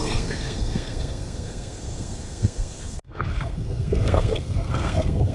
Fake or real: fake